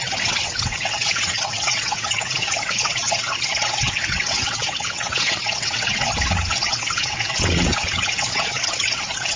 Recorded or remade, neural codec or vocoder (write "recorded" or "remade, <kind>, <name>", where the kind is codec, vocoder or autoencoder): remade, vocoder, WaveNeXt